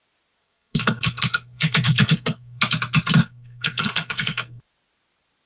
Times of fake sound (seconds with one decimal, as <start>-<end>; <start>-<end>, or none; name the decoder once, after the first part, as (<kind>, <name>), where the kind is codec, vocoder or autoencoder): 0.4-2.6 (codec, SNAC); 3.2-4.6